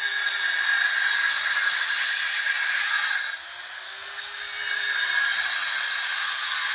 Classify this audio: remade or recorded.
recorded